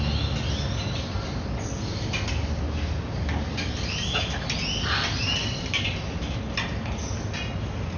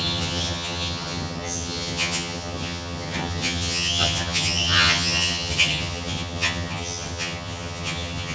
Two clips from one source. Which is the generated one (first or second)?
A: second